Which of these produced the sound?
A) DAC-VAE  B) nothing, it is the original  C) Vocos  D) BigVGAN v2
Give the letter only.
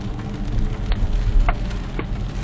B